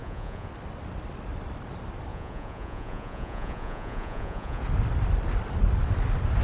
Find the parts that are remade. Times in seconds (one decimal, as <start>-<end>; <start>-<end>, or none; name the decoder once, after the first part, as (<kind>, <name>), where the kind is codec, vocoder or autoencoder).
0.0-0.5 (vocoder, Vocos); 2.1-4.6